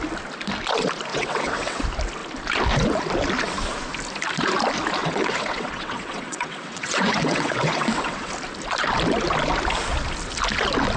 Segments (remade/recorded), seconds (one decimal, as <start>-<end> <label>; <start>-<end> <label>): 0.0-1.1 recorded; 1.1-1.8 remade; 1.8-5.0 recorded; 5.0-8.3 remade; 8.3-11.0 recorded